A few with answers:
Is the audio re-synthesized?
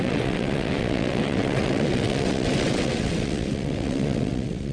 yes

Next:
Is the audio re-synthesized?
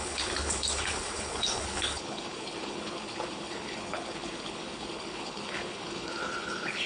yes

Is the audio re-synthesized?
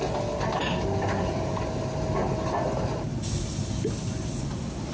no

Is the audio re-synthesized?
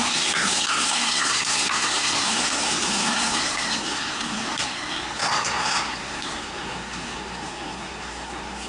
yes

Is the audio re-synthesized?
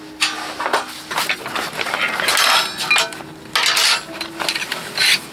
no